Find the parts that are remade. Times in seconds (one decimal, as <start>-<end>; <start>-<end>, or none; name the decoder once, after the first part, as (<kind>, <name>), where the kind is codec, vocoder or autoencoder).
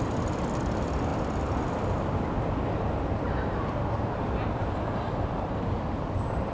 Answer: none